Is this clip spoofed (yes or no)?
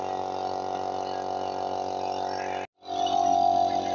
no